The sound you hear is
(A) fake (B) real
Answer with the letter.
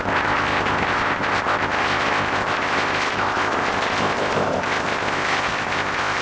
A